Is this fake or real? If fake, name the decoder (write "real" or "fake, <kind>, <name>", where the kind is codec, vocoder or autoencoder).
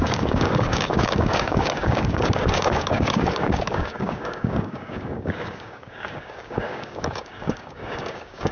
fake, codec, DAC